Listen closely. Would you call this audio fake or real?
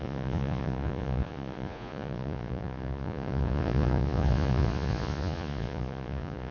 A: fake